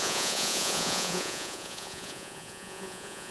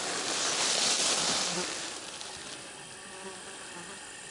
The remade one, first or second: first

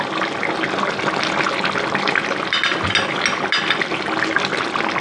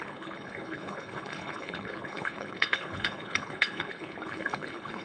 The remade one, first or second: second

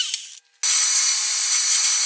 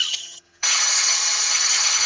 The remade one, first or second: second